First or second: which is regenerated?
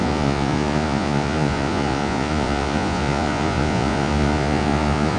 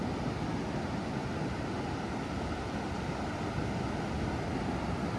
first